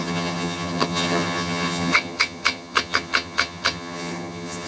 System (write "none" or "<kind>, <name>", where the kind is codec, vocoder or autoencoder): vocoder, HiFi-GAN